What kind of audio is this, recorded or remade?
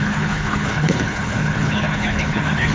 remade